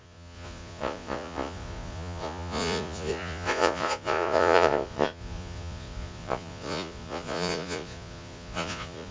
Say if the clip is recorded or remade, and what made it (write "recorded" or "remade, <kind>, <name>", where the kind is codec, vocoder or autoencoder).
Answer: remade, vocoder, Vocos